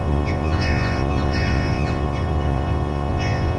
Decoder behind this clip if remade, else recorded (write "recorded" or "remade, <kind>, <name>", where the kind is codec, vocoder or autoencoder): remade, vocoder, Vocos